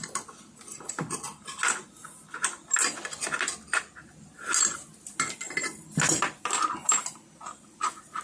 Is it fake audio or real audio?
real